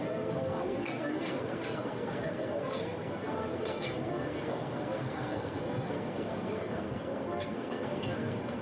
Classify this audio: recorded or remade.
remade